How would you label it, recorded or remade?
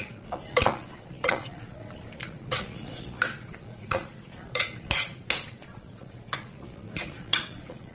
remade